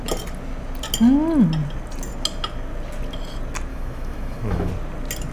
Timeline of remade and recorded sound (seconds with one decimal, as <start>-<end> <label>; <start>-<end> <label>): 0.0-3.7 recorded; 3.7-4.7 remade; 4.7-5.3 recorded